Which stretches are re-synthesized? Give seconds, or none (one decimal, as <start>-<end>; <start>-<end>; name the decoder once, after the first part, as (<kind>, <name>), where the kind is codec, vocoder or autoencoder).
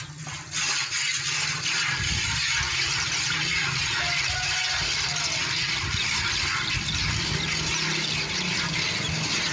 none